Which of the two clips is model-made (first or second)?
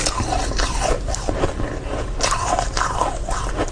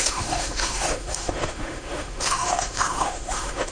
second